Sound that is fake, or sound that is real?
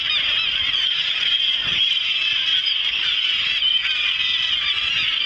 real